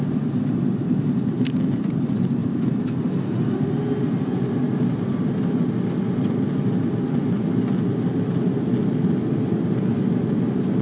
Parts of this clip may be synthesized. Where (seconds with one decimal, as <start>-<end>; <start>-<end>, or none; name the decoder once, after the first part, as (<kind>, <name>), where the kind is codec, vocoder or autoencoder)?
none